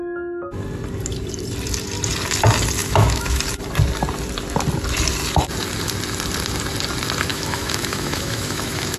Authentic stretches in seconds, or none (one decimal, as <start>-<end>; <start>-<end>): 0.0-2.8; 3.4-7.3